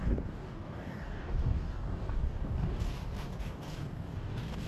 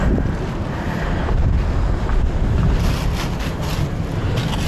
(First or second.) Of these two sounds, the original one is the second